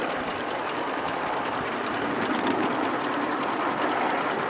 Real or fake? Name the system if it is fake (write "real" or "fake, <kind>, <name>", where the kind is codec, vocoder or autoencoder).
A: real